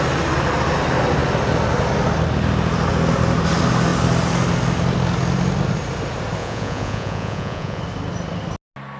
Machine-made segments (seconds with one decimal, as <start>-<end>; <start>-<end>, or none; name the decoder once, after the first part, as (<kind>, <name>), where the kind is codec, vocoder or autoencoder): 6.4-7.8 (vocoder, Vocos)